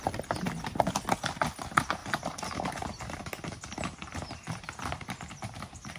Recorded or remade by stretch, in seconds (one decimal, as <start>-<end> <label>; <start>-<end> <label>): 0.0-6.0 recorded